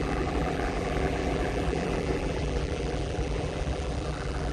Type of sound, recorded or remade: remade